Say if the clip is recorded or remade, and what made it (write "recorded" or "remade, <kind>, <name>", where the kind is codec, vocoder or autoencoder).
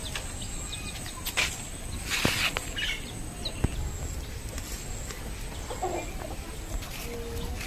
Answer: recorded